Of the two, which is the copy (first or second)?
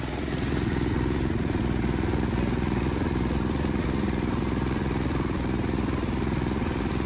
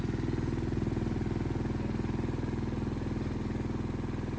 first